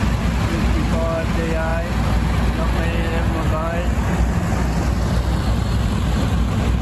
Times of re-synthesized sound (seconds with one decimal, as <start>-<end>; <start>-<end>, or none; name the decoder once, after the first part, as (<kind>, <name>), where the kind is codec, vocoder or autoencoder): none